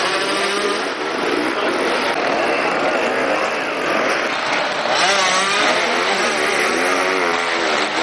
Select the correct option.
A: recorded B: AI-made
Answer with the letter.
A